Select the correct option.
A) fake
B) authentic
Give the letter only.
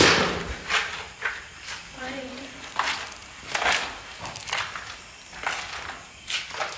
B